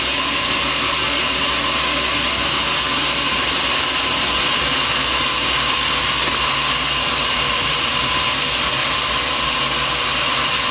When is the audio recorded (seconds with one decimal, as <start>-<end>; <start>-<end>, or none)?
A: 0.0-8.8; 10.0-10.7